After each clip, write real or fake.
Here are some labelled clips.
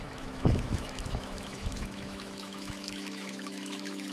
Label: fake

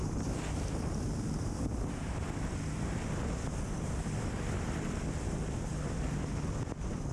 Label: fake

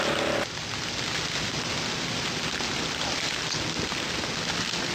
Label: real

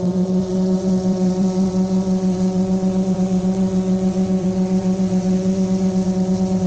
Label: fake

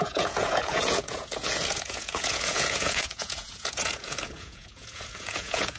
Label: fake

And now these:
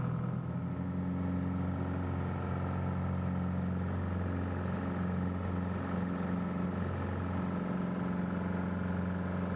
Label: real